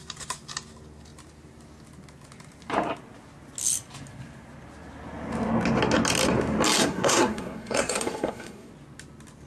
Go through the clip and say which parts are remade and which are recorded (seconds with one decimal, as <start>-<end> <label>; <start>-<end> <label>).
0.0-6.8 recorded; 6.8-8.7 remade; 8.7-9.5 recorded